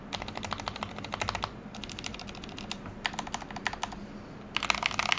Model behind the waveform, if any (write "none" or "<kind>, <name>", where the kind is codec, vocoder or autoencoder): none